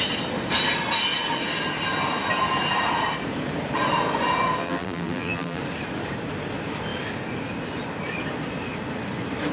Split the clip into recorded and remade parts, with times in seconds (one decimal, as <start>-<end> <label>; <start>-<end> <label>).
0.0-4.6 recorded; 4.6-5.6 remade; 5.6-9.5 recorded